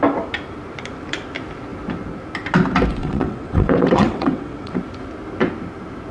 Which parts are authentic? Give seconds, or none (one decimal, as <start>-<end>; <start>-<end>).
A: 0.0-2.9; 4.8-6.1